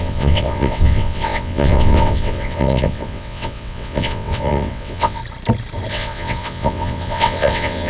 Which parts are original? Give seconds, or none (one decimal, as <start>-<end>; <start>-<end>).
5.2-5.9